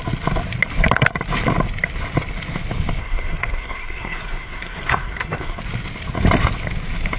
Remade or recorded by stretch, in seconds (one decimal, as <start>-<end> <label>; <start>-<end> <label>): 0.0-3.0 recorded; 3.0-5.6 remade; 5.6-7.2 recorded